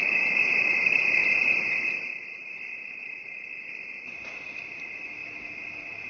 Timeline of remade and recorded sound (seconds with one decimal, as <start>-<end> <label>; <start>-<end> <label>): 0.0-1.2 remade; 1.2-2.5 recorded; 2.5-5.2 remade; 5.2-6.1 recorded